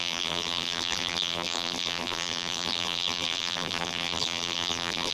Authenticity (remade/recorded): remade